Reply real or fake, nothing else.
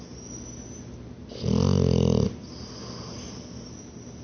real